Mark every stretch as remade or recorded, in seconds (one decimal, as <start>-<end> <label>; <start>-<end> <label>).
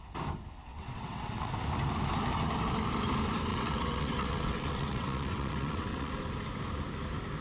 0.0-0.7 recorded; 0.7-1.5 remade; 1.5-3.5 recorded; 3.5-6.1 remade; 6.1-7.4 recorded